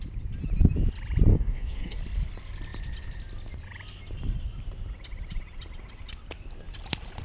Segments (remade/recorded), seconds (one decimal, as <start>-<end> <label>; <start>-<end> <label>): 0.0-1.3 recorded; 1.3-2.0 remade; 2.0-7.2 recorded